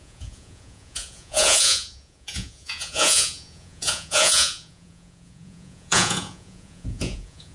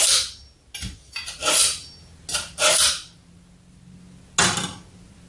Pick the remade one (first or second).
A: first